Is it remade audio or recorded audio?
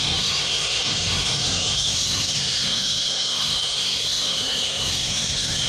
remade